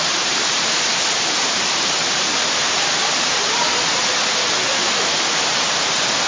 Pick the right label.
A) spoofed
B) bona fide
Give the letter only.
A